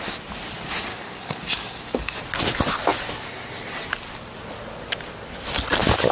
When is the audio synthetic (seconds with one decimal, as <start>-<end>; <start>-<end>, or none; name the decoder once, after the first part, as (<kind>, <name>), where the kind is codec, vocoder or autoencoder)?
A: 0.9-2.2 (codec, DAC)